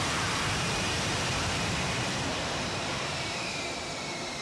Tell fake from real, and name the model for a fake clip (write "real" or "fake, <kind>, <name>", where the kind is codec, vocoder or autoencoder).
fake, vocoder, BigVGAN v2